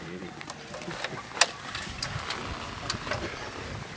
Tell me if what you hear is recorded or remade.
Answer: recorded